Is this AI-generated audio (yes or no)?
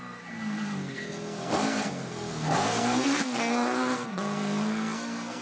yes